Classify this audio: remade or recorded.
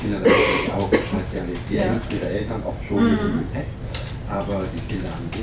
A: recorded